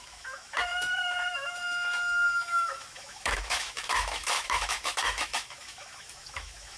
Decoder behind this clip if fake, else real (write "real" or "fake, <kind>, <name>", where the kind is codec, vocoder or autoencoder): fake, autoencoder, DAC-VAE